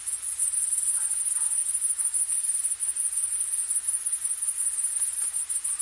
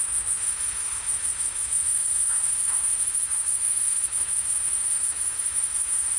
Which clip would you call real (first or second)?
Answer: first